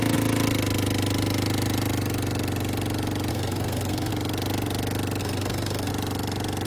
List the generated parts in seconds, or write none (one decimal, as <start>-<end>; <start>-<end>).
3.3-4.1; 5.2-5.9